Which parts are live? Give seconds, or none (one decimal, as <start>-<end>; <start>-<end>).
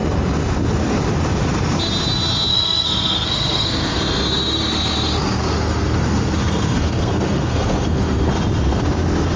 0.0-2.5; 4.0-5.4; 8.3-9.4